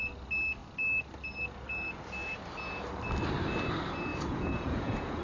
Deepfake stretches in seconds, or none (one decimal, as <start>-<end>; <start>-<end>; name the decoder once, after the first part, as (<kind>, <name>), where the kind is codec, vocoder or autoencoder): 4.1-5.2 (vocoder, Vocos)